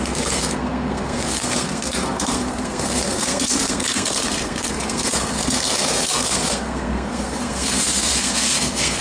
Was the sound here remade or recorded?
remade